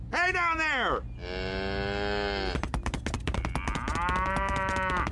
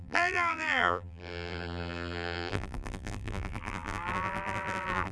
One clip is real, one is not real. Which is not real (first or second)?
second